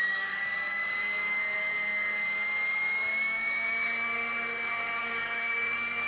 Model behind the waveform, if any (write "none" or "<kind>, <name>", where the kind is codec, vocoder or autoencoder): codec, DAC